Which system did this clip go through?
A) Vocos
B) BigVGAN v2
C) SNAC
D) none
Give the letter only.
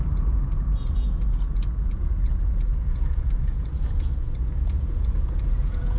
A